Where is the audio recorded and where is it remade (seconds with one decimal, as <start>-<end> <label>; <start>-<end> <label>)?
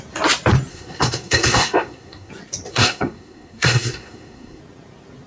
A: 0.0-0.7 recorded; 0.7-2.3 remade; 2.3-2.7 recorded; 2.7-4.6 remade; 4.6-5.3 recorded